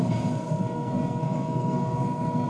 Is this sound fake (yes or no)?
yes